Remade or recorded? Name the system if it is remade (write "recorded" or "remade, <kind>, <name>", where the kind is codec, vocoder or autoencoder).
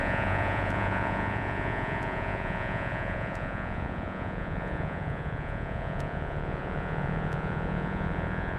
remade, vocoder, Vocos